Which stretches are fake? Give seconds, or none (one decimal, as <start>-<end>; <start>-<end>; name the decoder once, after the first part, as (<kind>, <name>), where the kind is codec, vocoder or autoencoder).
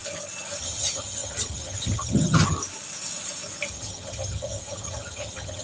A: 0.6-2.6 (vocoder, HiFi-GAN); 3.7-5.6